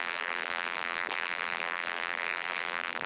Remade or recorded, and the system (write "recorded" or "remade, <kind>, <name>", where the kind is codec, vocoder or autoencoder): remade, vocoder, BigVGAN v2